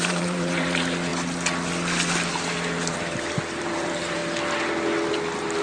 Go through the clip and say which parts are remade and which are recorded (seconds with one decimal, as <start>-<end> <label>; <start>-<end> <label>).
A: 0.0-1.1 remade; 1.1-2.9 recorded; 2.9-4.2 remade; 4.2-5.6 recorded